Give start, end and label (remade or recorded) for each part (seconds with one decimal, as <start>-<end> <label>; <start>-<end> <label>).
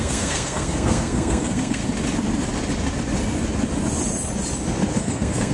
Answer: 0.0-1.8 remade; 1.8-5.0 recorded; 5.0-5.5 remade